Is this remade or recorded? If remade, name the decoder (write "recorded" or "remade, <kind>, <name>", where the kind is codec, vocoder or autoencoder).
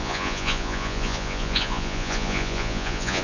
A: remade, vocoder, Vocos